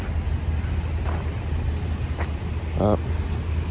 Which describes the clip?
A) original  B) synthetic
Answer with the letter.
A